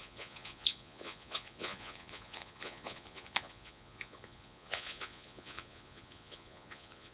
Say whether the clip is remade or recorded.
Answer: remade